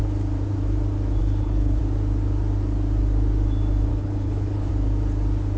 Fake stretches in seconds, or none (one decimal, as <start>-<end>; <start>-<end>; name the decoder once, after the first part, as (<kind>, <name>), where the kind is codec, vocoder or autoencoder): 1.2-1.8 (codec, HILCodec); 3.9-4.7